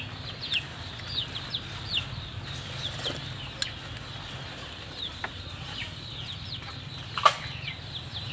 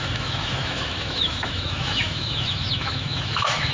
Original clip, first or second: first